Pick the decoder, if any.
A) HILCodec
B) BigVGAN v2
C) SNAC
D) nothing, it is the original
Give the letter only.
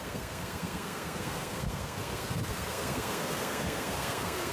C